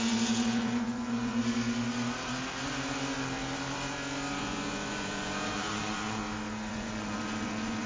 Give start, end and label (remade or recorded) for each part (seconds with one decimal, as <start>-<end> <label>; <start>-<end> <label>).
0.0-1.4 remade; 1.4-4.4 recorded; 4.4-6.2 remade; 6.2-6.7 recorded; 6.7-7.9 remade